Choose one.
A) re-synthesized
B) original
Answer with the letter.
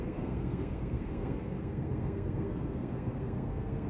A